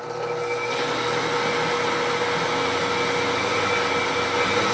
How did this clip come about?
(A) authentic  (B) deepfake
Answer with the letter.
A